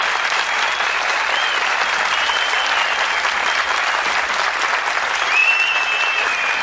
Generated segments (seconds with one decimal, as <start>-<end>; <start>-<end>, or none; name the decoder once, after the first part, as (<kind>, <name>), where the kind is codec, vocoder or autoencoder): none